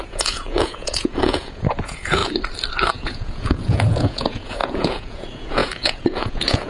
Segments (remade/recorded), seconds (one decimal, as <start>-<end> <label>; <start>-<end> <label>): 0.0-2.2 remade; 2.2-2.9 recorded; 2.9-6.7 remade